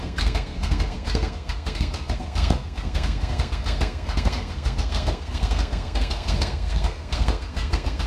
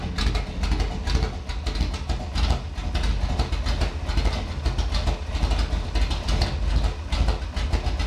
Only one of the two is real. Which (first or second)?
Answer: second